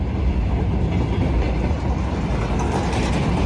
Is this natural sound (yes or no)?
yes